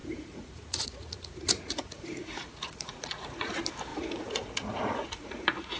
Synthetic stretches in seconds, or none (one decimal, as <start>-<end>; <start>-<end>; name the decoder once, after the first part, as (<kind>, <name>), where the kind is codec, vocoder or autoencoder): 0.0-3.5 (vocoder, Vocos); 3.9-5.8